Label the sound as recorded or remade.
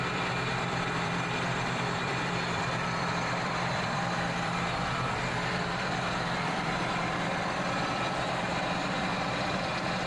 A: remade